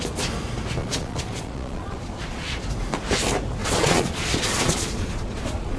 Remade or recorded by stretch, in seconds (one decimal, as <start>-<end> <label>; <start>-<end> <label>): 0.0-0.8 recorded; 0.8-2.6 remade; 2.6-3.6 recorded; 3.6-5.8 remade